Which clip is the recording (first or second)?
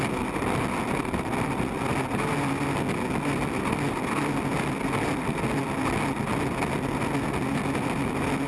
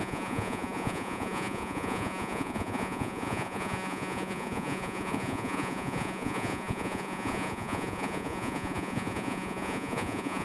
first